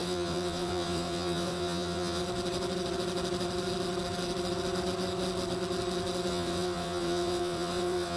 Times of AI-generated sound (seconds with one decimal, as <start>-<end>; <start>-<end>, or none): 0.0-2.2; 6.3-8.2